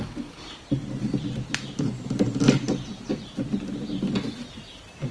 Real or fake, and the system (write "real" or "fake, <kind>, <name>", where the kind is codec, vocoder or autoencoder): real